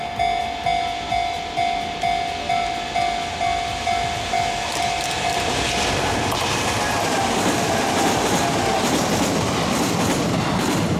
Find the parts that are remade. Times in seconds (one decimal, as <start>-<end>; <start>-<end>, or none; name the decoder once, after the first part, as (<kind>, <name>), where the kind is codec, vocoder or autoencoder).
none

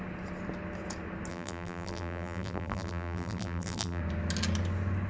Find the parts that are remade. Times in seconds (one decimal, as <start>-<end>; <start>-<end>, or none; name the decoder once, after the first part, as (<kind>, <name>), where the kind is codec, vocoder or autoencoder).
1.3-4.0 (vocoder, BigVGAN v2)

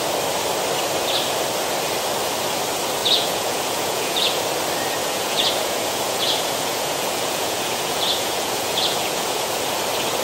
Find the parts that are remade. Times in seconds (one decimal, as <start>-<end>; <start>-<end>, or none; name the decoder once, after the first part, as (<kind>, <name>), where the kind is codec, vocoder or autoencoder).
3.0-4.4 (vocoder, Vocos); 5.0-9.6

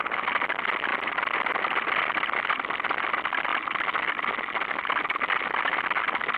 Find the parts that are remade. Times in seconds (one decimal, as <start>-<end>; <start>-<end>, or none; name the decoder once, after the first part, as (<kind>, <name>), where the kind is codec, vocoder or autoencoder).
none

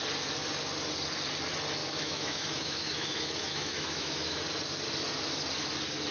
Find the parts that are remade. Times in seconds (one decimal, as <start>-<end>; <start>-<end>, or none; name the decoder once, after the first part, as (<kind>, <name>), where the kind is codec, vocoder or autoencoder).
1.8-4.4 (autoencoder, DAC-VAE)

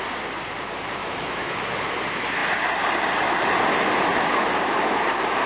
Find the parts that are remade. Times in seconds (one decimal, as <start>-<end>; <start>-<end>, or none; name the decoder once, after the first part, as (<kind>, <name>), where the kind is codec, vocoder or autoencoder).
1.0-1.6 (autoencoder, DAC-VAE)